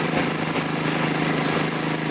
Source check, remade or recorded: recorded